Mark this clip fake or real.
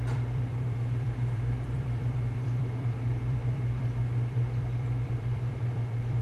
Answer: fake